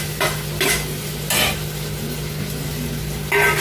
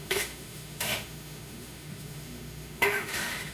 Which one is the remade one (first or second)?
second